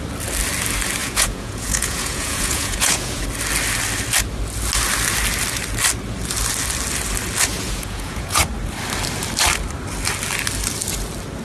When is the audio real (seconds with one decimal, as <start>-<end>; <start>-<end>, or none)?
0.0-1.0; 3.2-7.5; 8.4-11.4